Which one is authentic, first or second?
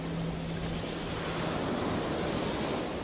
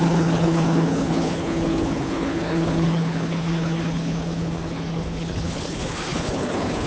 first